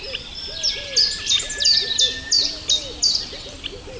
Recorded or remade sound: recorded